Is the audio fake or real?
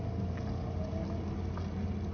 real